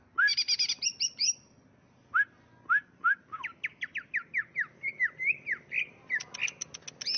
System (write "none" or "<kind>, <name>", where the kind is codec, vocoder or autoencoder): none